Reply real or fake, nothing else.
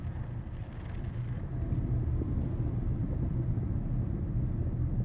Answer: real